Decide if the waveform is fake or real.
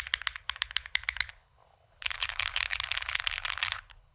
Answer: fake